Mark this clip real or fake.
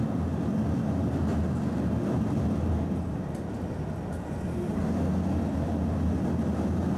real